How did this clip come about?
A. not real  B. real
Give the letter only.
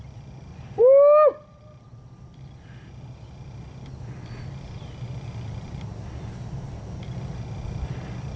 B